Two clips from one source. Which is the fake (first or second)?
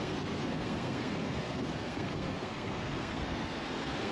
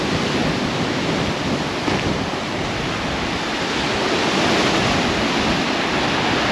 first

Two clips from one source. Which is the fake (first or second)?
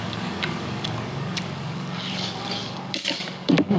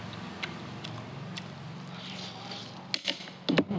first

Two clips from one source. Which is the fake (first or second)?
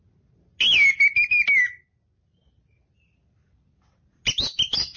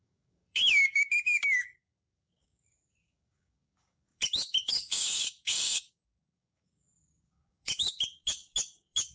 second